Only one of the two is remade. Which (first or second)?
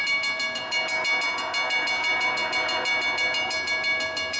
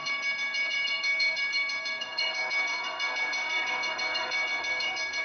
second